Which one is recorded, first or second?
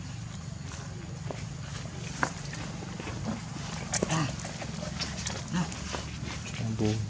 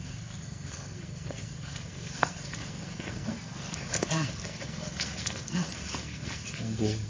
first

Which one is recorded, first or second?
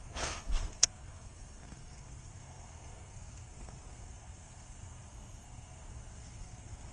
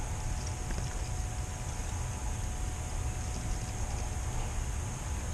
second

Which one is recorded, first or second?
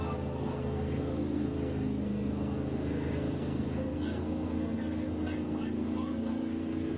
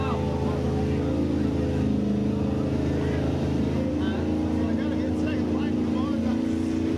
second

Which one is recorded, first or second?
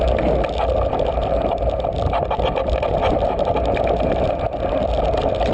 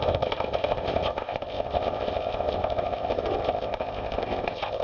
first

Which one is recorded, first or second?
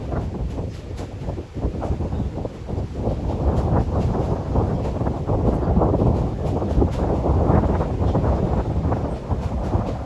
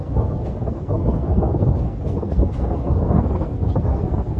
first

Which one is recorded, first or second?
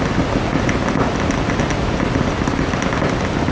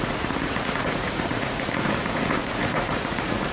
first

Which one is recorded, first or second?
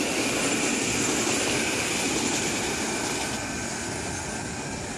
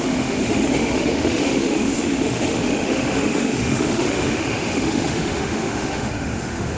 first